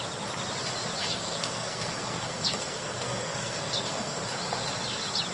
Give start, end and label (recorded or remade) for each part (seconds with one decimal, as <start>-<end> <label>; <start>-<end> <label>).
0.0-1.0 recorded; 1.0-4.2 remade; 4.2-5.3 recorded